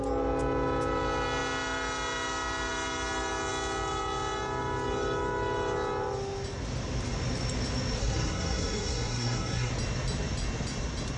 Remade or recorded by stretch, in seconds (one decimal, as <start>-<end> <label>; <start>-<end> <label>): 0.0-8.0 recorded; 8.0-9.7 remade; 9.7-11.2 recorded